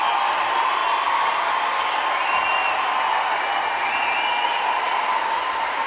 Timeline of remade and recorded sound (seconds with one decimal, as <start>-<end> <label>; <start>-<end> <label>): 0.0-5.9 recorded